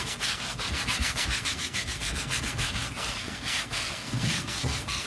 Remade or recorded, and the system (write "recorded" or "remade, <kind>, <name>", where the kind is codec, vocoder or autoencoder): remade, codec, SNAC